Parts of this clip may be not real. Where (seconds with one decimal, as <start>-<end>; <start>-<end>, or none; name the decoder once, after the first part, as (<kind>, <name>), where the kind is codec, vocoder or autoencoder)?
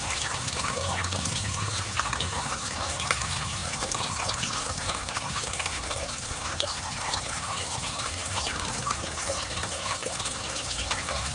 0.0-11.3 (codec, SNAC)